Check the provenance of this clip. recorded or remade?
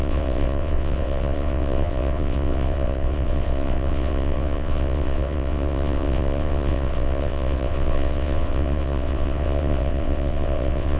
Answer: remade